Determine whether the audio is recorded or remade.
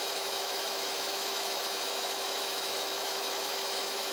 remade